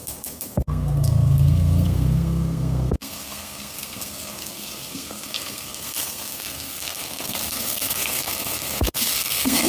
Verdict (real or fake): fake